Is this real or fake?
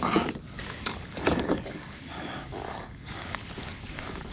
fake